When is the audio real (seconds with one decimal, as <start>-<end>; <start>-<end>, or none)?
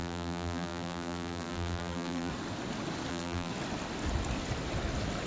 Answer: 2.3-3.1; 3.5-5.3